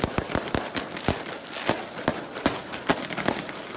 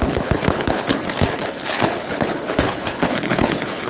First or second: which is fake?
second